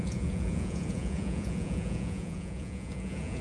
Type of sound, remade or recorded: remade